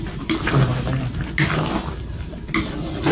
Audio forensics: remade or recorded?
recorded